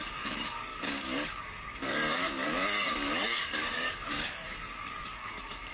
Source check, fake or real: fake